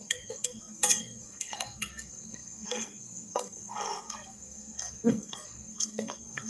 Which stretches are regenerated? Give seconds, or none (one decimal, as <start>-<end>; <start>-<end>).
0.0-6.5